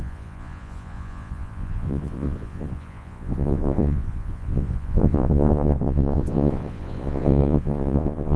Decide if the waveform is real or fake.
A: fake